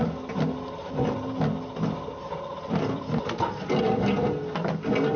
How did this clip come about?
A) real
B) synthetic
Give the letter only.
A